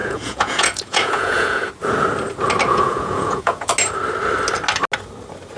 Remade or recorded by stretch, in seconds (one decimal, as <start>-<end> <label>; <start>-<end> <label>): 0.0-1.7 remade; 1.7-2.7 recorded; 2.7-3.7 remade; 3.7-5.6 recorded